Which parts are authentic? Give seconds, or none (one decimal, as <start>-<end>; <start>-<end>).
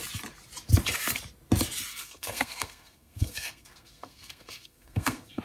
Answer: 0.0-1.9